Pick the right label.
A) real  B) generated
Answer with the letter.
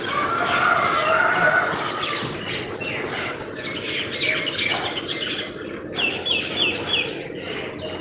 A